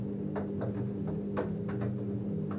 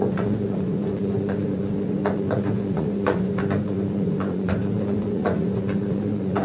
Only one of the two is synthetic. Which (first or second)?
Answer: second